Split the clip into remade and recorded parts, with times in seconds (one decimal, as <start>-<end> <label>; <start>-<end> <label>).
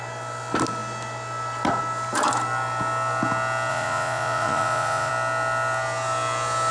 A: 0.0-3.7 recorded; 3.7-5.1 remade; 5.1-6.7 recorded